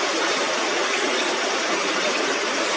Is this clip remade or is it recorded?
recorded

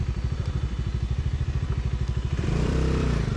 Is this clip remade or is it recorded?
remade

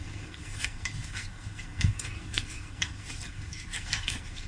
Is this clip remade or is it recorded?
remade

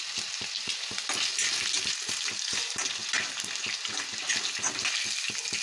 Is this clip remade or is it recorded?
recorded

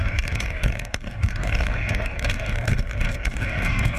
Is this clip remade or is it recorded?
remade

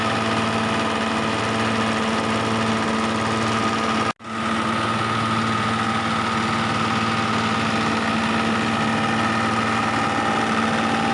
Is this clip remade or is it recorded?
recorded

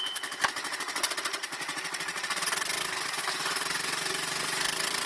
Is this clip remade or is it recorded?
recorded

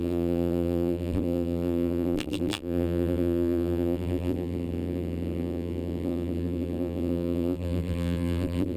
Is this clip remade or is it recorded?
remade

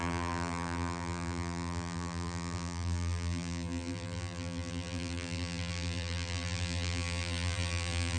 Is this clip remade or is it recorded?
remade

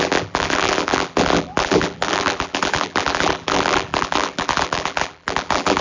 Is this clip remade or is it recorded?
remade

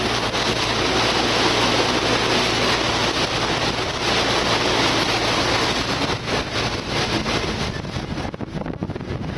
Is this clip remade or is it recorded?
recorded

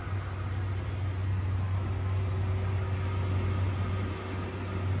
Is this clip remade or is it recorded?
recorded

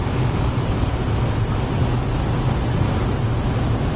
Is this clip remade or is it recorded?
recorded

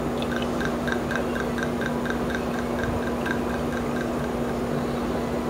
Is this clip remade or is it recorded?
recorded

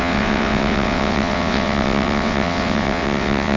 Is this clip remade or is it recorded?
remade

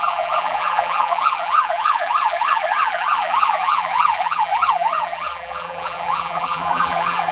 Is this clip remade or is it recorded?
remade